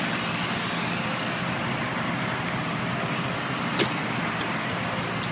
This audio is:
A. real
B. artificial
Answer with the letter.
A